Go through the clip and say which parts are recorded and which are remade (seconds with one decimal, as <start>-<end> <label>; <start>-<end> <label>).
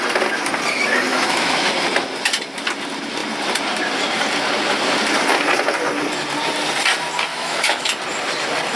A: 0.0-1.1 recorded; 1.1-1.7 remade; 1.7-7.3 recorded; 7.3-7.9 remade; 7.9-8.8 recorded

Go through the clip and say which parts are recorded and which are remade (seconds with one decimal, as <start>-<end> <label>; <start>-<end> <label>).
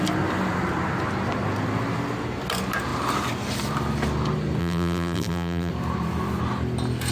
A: 0.0-4.6 recorded; 4.6-5.7 remade; 5.7-7.1 recorded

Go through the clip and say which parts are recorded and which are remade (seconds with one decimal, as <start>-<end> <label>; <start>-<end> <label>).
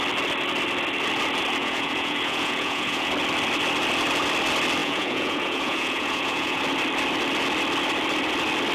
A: 0.0-1.6 recorded; 1.6-3.1 remade; 3.1-4.8 recorded; 4.8-6.6 remade; 6.6-8.7 recorded